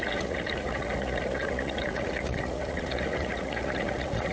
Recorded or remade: remade